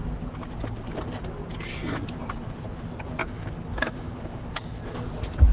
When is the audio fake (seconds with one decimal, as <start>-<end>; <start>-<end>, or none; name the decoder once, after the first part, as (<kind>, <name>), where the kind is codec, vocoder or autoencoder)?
3.2-4.6 (codec, DAC)